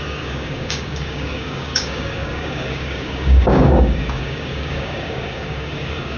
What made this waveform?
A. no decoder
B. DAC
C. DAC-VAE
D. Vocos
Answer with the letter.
B